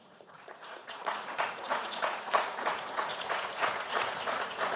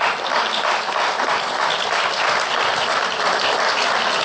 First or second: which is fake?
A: first